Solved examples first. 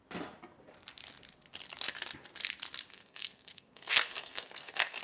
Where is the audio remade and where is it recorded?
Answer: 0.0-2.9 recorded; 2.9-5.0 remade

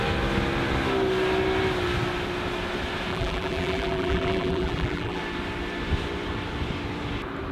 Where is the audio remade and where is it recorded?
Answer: 0.0-3.1 recorded; 3.1-5.2 remade; 5.2-7.5 recorded

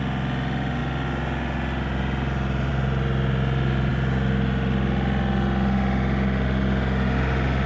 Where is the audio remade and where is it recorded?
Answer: 0.0-7.7 recorded

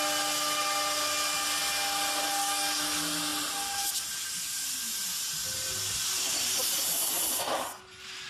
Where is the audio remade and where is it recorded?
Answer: 0.0-8.3 recorded

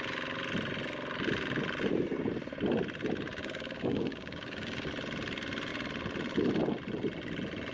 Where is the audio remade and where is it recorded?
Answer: 0.0-3.4 recorded; 3.4-4.9 remade; 4.9-7.7 recorded

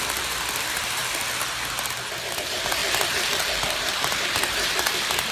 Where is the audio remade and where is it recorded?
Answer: 0.0-1.0 remade; 1.0-2.4 recorded; 2.4-2.8 remade; 2.8-3.8 recorded; 3.8-5.3 remade

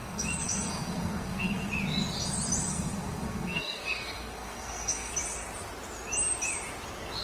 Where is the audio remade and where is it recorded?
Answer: 0.0-1.7 remade; 1.7-2.7 recorded; 2.7-5.1 remade; 5.1-7.2 recorded